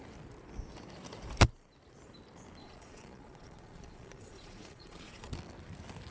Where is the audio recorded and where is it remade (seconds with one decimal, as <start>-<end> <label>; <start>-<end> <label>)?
0.0-2.6 recorded; 2.6-5.3 remade; 5.3-6.1 recorded